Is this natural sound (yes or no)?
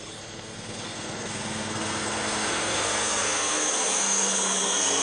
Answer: no